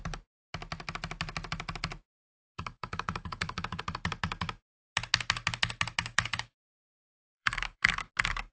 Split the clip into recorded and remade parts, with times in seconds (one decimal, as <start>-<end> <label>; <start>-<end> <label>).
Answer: 0.0-2.2 recorded; 2.2-3.8 remade; 3.8-6.0 recorded; 6.0-8.1 remade; 8.1-8.5 recorded